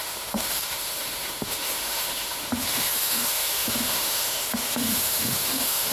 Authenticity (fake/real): fake